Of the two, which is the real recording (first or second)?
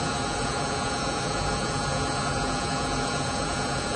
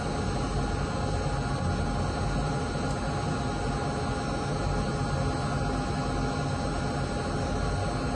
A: second